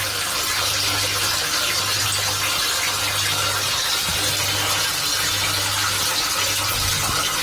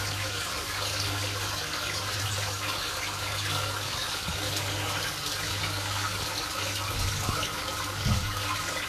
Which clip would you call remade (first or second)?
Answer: second